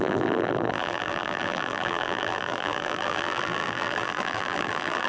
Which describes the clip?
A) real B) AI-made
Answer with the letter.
B